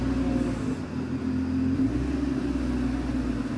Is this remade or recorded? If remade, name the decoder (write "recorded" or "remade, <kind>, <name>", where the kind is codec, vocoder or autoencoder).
recorded